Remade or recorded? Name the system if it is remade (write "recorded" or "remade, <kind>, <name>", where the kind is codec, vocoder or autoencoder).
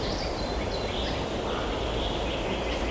recorded